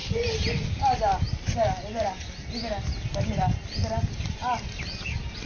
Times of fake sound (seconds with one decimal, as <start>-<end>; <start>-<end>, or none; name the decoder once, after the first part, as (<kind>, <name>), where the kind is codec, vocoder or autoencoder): none